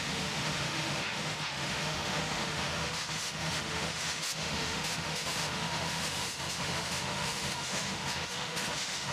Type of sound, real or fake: fake